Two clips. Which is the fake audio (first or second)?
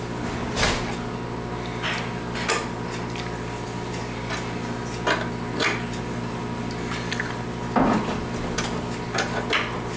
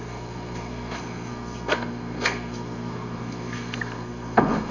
second